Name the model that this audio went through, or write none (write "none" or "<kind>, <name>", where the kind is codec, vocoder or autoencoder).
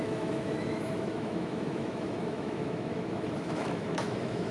autoencoder, DAC-VAE